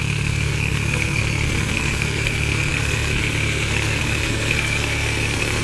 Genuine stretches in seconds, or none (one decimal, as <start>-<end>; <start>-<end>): none